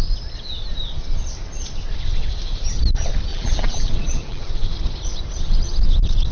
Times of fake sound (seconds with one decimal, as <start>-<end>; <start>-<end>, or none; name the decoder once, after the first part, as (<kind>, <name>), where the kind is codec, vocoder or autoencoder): 3.3-4.5 (vocoder, BigVGAN v2)